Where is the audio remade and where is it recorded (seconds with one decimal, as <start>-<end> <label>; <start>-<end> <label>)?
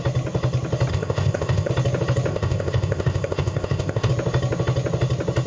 0.0-0.9 recorded; 0.9-1.7 remade; 1.7-2.3 recorded; 2.3-4.1 remade; 4.1-5.5 recorded